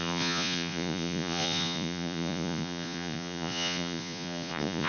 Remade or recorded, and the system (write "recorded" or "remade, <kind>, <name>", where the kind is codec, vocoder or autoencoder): remade, vocoder, Vocos